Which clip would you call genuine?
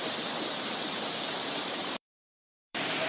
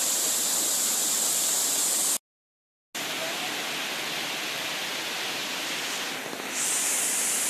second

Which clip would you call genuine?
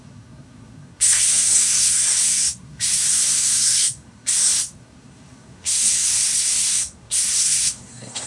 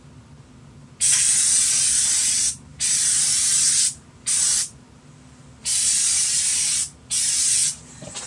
second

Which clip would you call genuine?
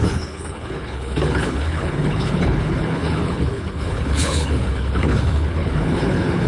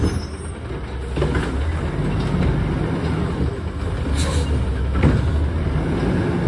second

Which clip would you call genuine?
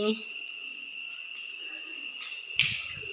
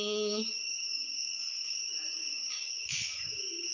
first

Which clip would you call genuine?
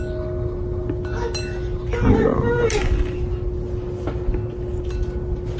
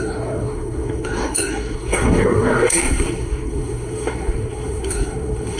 first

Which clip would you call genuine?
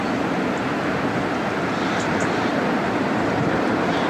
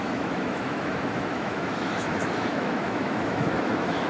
first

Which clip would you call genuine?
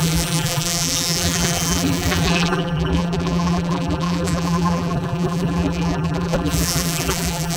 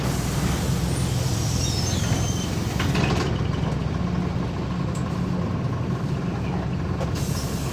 second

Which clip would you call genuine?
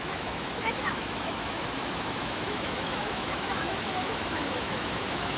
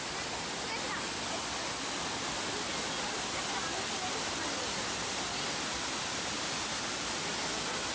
second